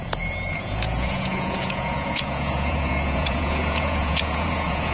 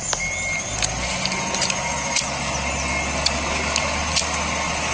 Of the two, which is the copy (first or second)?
first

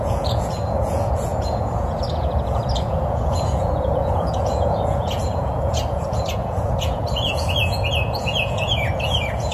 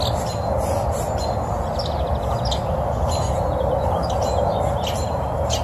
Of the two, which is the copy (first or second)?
first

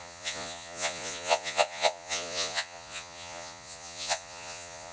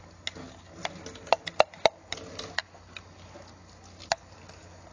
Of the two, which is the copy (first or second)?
first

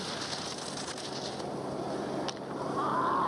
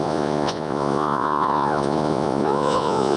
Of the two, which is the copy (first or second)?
second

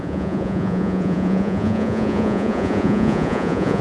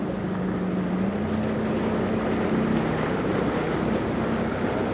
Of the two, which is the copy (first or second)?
first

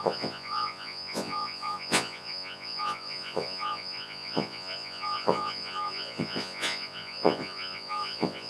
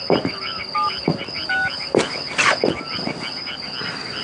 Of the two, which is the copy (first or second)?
first